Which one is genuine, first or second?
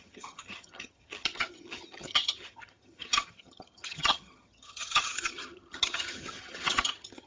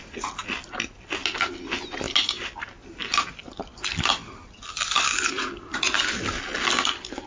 second